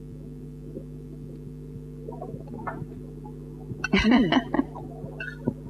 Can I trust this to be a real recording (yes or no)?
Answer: yes